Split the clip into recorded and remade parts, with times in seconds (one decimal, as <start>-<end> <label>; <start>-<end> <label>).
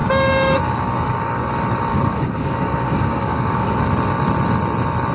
0.0-1.5 remade; 1.5-1.9 recorded; 1.9-3.8 remade; 3.8-5.1 recorded